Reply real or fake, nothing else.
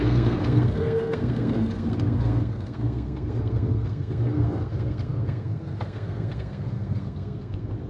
fake